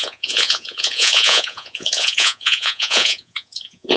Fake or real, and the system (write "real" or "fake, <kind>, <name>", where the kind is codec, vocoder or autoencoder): fake, vocoder, Vocos